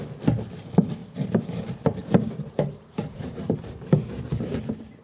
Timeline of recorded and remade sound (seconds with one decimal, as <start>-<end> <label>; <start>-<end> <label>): 0.0-1.0 recorded; 1.0-1.6 remade; 1.6-2.0 recorded; 2.0-4.6 remade; 4.6-5.0 recorded